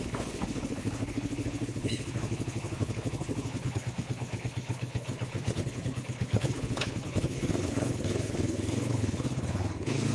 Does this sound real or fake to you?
fake